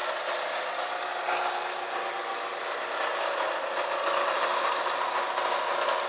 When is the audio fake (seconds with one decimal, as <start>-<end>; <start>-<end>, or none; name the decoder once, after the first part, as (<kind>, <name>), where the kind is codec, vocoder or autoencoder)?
none